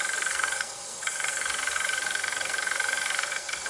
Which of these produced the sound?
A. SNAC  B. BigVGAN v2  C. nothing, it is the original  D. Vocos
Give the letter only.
A